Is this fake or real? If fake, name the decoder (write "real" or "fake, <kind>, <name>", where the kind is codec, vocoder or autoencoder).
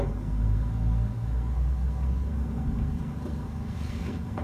fake, codec, SNAC